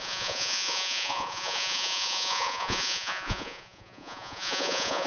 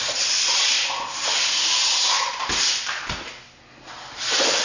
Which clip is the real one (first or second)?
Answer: second